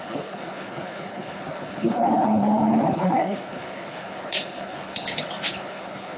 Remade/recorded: remade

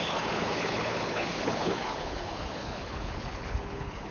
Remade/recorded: remade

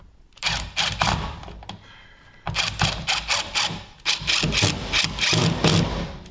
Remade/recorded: recorded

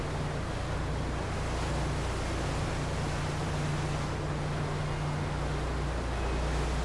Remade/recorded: recorded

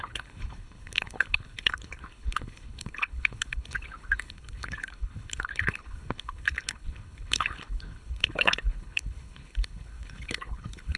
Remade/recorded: remade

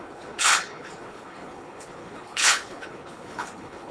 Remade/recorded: remade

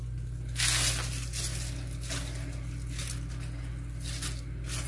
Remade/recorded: recorded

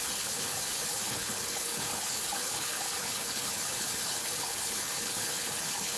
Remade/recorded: remade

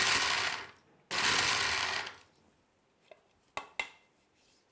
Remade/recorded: recorded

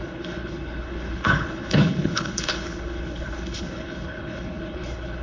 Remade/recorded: remade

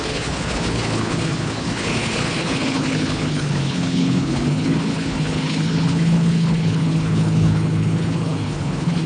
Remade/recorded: remade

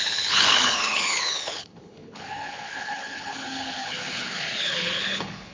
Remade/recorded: remade